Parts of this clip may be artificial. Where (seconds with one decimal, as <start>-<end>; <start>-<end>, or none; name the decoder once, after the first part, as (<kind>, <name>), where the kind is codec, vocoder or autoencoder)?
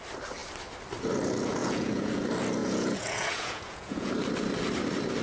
1.6-2.2 (vocoder, Vocos); 2.6-4.1